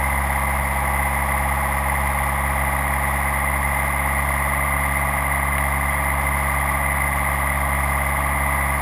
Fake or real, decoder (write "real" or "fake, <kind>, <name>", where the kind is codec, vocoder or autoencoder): real